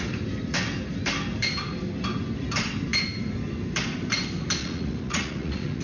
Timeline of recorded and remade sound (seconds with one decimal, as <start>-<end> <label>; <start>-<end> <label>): 0.0-4.6 recorded; 4.6-5.8 remade